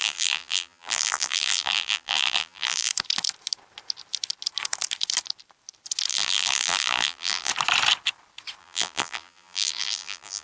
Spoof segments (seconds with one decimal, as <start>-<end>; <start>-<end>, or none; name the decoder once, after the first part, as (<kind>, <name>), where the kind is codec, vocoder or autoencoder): 0.0-2.9 (vocoder, BigVGAN v2); 6.1-7.5; 8.6-10.4

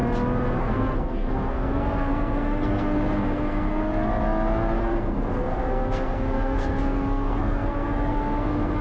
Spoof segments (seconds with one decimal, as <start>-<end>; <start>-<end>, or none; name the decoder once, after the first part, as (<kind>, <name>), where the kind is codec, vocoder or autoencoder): 0.6-4.1 (codec, SNAC); 4.8-8.8

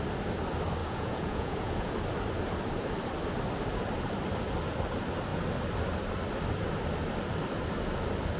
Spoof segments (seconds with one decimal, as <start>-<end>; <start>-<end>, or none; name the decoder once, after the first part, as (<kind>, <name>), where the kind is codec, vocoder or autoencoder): 0.8-1.9 (vocoder, Vocos)

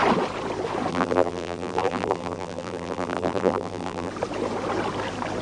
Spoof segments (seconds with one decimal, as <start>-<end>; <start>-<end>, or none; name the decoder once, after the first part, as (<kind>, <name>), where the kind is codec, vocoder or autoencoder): 0.9-4.1 (vocoder, BigVGAN v2)

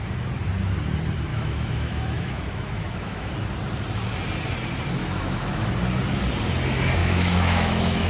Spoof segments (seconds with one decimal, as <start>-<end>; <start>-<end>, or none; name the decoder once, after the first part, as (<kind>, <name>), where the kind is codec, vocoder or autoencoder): 1.3-3.3 (autoencoder, DAC-VAE); 5.0-5.7; 7.0-8.1